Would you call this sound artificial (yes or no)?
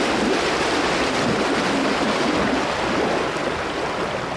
no